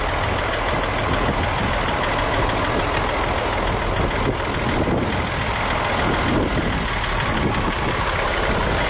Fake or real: real